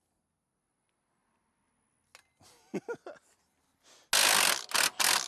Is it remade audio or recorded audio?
recorded